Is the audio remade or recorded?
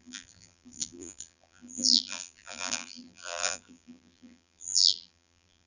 remade